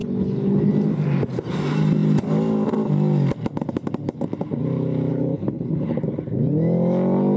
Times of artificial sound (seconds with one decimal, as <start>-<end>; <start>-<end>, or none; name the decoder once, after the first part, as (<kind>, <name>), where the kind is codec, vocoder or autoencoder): 0.0-0.7 (codec, HILCodec); 5.1-6.0